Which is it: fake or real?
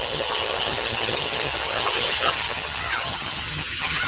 fake